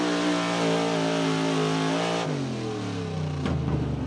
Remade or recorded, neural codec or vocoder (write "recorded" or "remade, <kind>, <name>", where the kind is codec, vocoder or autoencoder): recorded